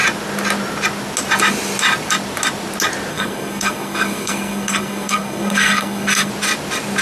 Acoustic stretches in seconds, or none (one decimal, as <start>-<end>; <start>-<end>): 0.0-3.1; 6.3-7.0